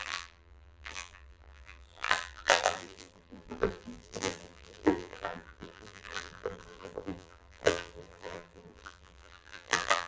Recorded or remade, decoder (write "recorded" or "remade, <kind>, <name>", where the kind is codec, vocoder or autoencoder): remade, vocoder, BigVGAN v2